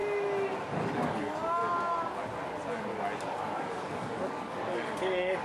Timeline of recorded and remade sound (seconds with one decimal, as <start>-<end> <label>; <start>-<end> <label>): 0.0-0.6 recorded; 0.6-1.6 remade; 1.6-3.2 recorded; 3.2-5.4 remade